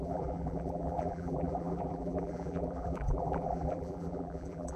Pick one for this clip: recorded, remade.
remade